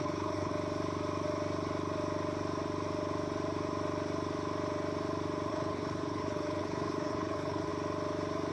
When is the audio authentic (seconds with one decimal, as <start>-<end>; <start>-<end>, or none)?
0.5-5.5; 7.7-8.5